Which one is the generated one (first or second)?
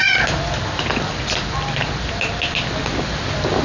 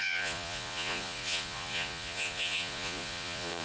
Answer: second